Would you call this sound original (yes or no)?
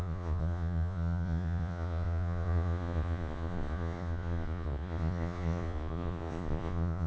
no